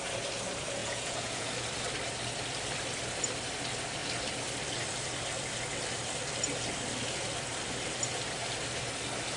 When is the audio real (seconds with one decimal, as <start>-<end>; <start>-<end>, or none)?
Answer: 0.0-0.8; 1.5-9.4